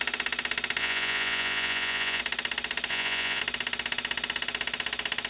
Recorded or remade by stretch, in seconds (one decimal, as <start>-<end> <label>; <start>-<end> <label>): 0.0-0.8 recorded; 0.8-2.2 remade; 2.2-2.9 recorded; 2.9-3.4 remade; 3.4-5.3 recorded